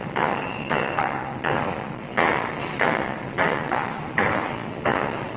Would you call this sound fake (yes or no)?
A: yes